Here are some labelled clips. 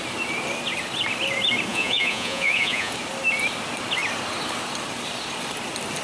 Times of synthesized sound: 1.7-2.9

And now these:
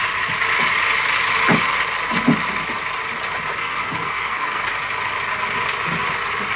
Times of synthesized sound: 3.6-4.6

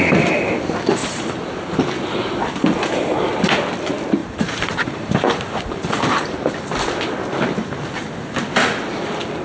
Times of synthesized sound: 4.2-6.5

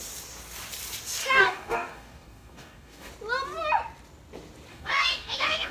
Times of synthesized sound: 1.2-3.1; 4.7-5.7

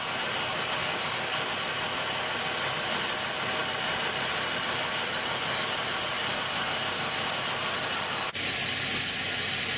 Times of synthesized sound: 0.8-1.5

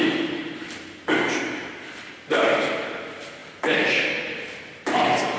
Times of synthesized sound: none